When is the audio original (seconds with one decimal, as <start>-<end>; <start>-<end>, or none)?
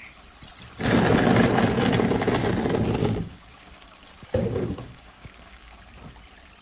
0.0-3.0; 5.8-6.6